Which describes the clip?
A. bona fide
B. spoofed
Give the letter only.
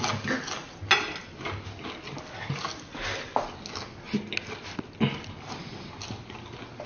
A